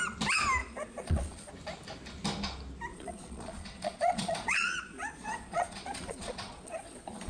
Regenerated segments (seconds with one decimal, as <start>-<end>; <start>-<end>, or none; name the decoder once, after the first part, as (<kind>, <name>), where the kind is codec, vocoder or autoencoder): 0.6-1.5 (vocoder, Vocos); 2.9-7.3